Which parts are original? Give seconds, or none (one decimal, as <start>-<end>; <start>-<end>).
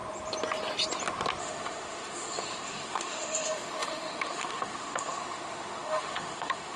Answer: 0.0-1.4